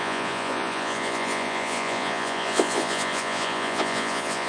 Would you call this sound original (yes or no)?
no